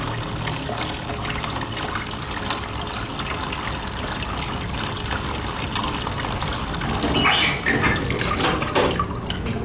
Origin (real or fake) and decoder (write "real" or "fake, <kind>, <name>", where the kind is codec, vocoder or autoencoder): real